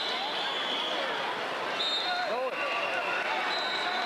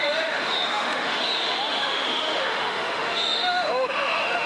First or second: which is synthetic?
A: second